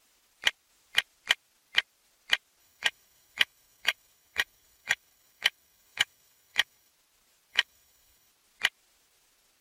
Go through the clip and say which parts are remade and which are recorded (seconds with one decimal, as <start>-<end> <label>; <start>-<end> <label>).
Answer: 0.0-2.6 recorded; 2.6-6.9 remade; 6.9-7.5 recorded; 7.5-8.3 remade; 8.3-9.6 recorded